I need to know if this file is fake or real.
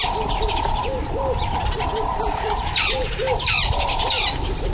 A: fake